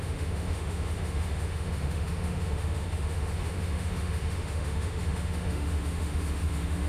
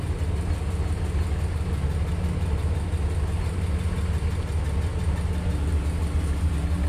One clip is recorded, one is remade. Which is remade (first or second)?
first